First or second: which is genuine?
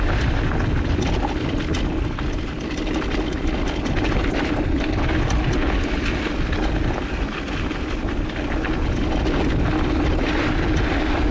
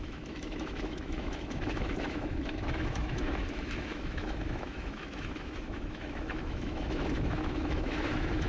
first